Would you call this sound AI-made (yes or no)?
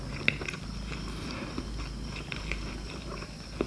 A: no